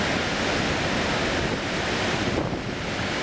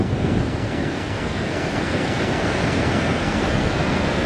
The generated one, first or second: second